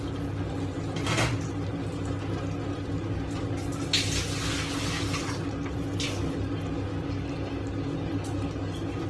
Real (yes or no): yes